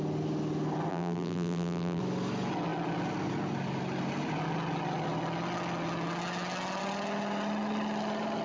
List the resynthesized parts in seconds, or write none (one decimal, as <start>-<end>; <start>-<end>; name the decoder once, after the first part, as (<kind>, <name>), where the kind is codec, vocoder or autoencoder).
0.9-2.0 (vocoder, BigVGAN v2)